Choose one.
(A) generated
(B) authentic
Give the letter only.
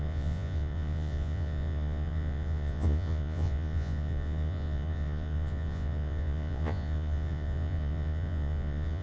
A